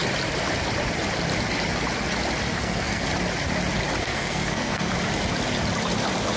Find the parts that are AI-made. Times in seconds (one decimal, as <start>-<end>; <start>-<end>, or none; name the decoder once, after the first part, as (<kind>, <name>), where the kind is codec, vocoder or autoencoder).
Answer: 2.5-3.1 (codec, SNAC); 4.0-4.9